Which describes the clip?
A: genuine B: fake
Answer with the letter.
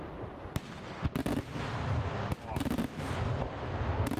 A